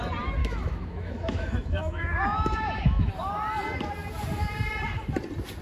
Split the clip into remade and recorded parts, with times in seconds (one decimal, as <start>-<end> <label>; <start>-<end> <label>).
0.0-0.4 recorded; 0.4-3.1 remade; 3.1-5.6 recorded